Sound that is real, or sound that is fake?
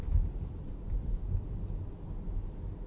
real